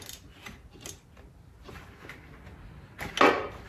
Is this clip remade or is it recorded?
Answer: recorded